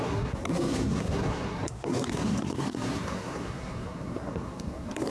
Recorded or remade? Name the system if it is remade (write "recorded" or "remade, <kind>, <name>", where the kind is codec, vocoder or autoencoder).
remade, codec, SNAC